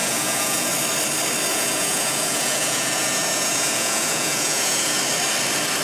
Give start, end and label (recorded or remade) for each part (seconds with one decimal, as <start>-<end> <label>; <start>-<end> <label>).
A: 0.0-0.7 remade; 0.7-1.5 recorded; 1.5-5.0 remade; 5.0-5.8 recorded